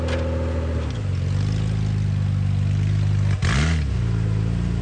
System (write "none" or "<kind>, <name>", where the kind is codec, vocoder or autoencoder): none